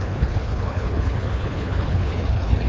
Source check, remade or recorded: remade